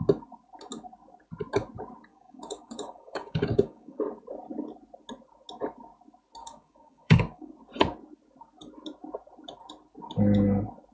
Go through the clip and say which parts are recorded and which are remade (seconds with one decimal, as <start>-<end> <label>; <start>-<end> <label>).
0.0-2.1 recorded; 2.1-4.0 remade; 4.0-6.4 recorded; 6.4-7.5 remade; 7.5-10.9 recorded